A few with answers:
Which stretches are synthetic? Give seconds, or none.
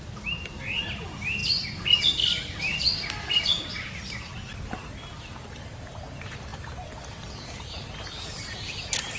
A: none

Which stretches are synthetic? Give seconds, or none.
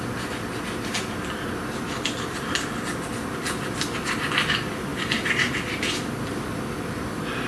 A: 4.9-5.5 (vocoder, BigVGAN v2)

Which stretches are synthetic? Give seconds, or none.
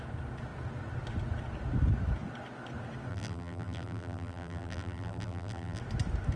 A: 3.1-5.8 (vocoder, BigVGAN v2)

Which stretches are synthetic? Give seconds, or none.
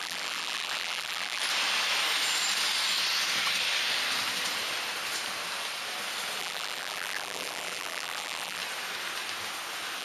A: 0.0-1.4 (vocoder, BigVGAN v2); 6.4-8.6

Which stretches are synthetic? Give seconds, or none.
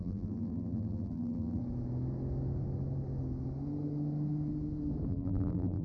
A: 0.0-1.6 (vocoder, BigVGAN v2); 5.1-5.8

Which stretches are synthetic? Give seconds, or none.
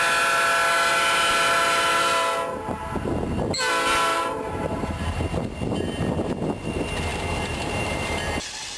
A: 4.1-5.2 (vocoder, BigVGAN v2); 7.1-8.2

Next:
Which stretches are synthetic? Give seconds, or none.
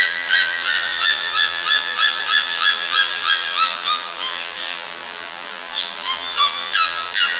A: 0.0-7.4 (vocoder, BigVGAN v2)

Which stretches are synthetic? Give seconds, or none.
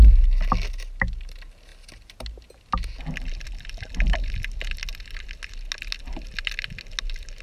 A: none